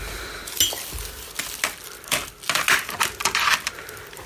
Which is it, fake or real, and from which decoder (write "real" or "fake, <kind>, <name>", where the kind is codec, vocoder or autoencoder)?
real